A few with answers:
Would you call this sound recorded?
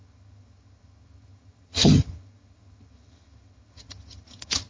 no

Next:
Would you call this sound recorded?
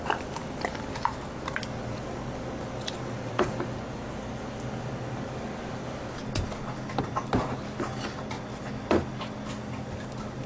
yes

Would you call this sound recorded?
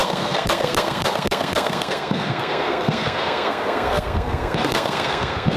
no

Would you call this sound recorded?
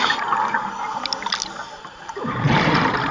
yes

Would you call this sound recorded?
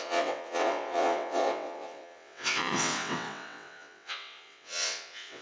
no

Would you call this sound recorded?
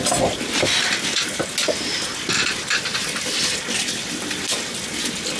yes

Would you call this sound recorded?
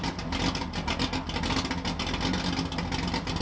yes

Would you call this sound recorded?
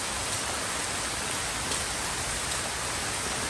yes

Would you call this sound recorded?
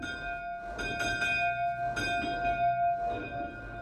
yes